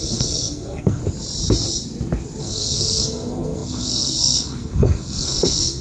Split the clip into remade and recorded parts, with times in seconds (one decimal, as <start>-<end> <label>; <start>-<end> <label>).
0.0-1.0 remade; 1.0-2.4 recorded; 2.4-5.8 remade